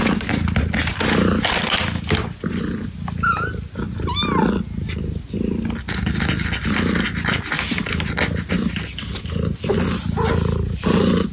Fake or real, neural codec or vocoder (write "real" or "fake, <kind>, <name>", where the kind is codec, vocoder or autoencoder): real